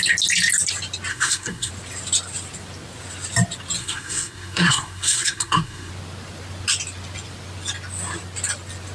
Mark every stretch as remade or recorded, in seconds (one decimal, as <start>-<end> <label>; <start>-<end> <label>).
0.0-1.1 recorded; 1.1-1.7 remade; 1.7-3.8 recorded; 3.8-5.9 remade; 5.9-8.9 recorded